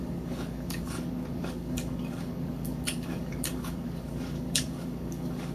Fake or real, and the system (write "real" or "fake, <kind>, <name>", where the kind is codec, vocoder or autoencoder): fake, codec, DAC